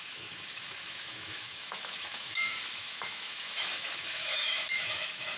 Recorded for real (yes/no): no